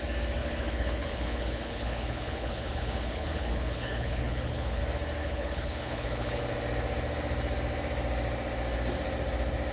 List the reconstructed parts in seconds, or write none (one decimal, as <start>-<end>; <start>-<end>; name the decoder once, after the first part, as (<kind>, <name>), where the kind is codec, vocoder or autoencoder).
0.4-4.8 (codec, HILCodec); 5.2-6.4